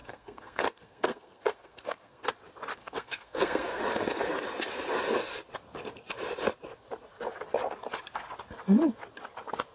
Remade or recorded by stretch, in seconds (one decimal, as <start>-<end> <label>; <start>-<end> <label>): 0.0-2.3 remade; 2.3-2.7 recorded; 2.7-3.8 remade; 3.8-9.7 recorded